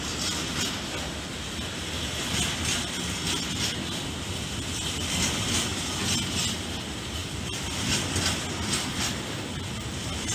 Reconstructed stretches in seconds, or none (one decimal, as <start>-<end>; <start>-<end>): none